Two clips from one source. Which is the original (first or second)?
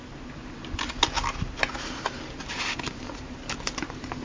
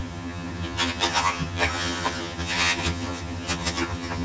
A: first